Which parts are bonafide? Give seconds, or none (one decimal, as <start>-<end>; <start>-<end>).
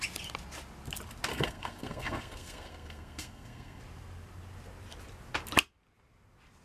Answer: 0.0-1.3; 3.8-6.6